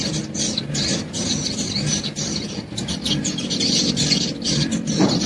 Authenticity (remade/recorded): recorded